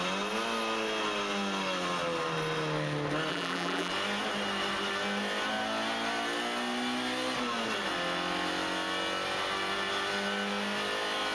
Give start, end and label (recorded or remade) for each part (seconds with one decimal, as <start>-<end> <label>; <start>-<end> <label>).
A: 0.0-3.3 recorded; 3.3-3.9 remade; 3.9-11.3 recorded

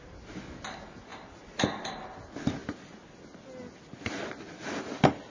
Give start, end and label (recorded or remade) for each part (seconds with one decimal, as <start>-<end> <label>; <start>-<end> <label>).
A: 0.0-1.1 recorded; 1.1-1.9 remade; 1.9-5.3 recorded

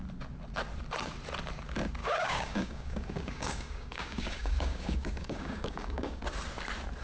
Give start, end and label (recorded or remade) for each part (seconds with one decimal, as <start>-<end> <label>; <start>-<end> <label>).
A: 0.0-2.0 recorded; 2.0-6.2 remade; 6.2-7.0 recorded

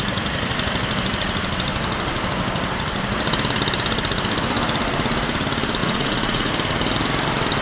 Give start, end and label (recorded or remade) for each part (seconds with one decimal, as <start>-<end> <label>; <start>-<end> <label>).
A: 0.0-5.8 recorded; 5.8-6.5 remade; 6.5-7.6 recorded

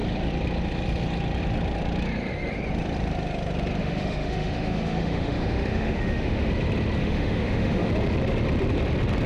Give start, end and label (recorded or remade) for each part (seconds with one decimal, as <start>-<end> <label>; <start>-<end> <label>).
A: 0.0-3.8 recorded; 3.8-6.5 remade; 6.5-7.0 recorded; 7.0-7.9 remade; 7.9-9.3 recorded

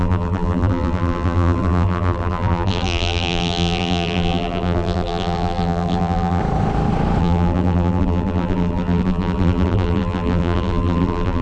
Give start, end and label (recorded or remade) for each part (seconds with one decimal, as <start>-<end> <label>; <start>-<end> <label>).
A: 0.0-6.4 remade; 6.4-7.2 recorded; 7.2-11.4 remade

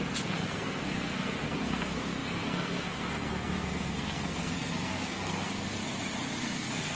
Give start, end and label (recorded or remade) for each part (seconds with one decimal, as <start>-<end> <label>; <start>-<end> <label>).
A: 0.0-5.8 remade; 5.8-6.4 recorded; 6.4-6.9 remade